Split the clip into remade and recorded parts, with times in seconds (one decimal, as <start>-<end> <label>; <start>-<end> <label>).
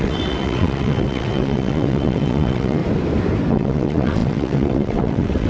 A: 0.0-2.8 remade; 2.8-3.5 recorded; 3.5-5.5 remade